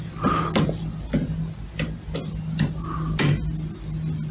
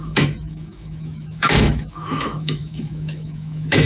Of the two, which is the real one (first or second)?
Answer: first